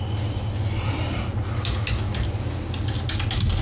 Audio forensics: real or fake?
real